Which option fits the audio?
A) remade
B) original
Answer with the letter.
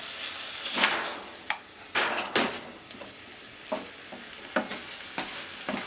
B